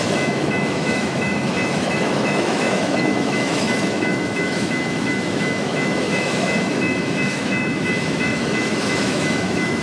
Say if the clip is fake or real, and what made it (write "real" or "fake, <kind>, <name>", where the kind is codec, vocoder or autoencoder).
fake, autoencoder, DAC-VAE